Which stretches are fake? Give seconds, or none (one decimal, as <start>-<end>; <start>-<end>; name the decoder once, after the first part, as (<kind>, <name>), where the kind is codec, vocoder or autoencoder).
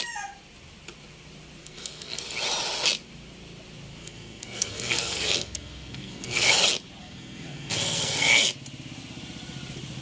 1.6-2.2 (codec, SNAC); 4.0-6.5; 7.0-8.5